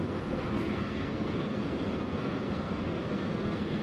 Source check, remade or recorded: remade